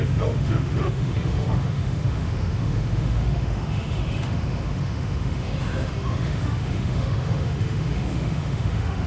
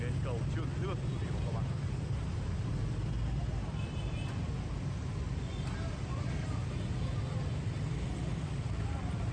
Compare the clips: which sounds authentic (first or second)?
second